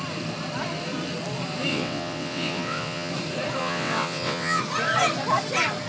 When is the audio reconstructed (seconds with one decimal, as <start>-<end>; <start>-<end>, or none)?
1.7-3.1; 3.6-4.6